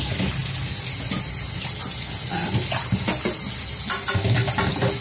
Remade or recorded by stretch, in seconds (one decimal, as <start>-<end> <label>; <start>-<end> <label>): 0.0-5.0 recorded